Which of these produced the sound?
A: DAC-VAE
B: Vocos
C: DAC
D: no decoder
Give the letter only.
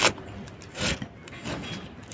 D